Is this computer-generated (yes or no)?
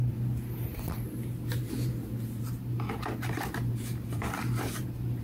yes